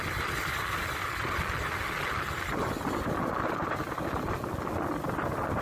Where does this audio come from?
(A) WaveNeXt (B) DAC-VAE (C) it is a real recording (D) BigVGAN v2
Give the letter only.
C